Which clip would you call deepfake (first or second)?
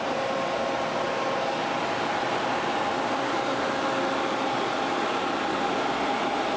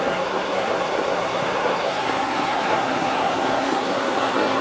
second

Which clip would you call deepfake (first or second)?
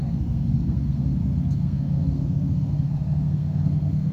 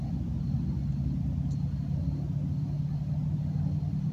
first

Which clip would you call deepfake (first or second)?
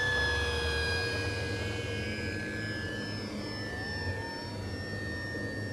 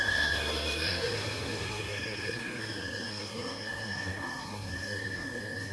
second